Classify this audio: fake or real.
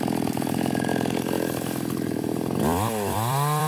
fake